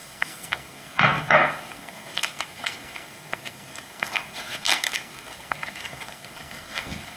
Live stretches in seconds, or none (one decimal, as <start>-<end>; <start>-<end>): none